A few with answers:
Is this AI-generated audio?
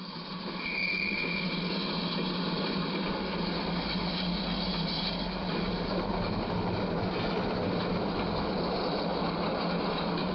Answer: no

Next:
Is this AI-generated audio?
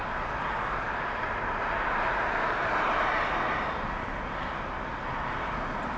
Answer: no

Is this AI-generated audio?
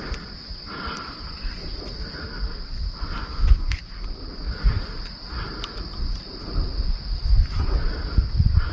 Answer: no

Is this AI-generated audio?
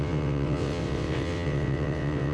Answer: yes